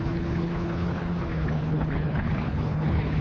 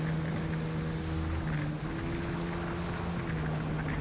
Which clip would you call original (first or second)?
second